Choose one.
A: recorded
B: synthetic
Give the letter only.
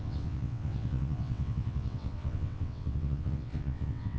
B